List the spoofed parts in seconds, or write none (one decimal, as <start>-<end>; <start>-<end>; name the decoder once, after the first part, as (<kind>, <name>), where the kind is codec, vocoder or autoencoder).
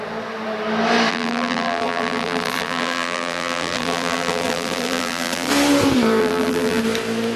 1.1-5.5 (vocoder, BigVGAN v2); 6.2-6.8